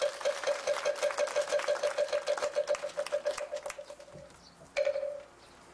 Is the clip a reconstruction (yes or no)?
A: no